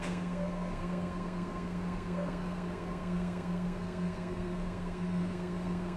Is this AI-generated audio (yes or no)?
yes